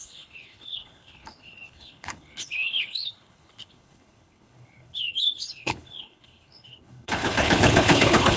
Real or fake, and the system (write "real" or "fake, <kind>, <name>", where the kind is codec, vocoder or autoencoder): fake, codec, HILCodec